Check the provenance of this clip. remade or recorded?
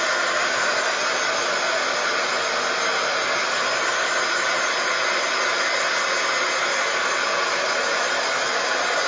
recorded